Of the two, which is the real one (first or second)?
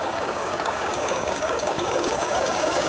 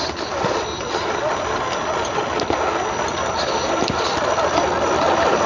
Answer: second